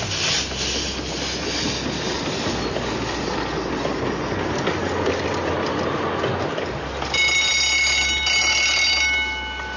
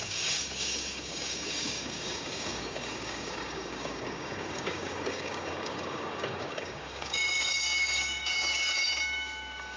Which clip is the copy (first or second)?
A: second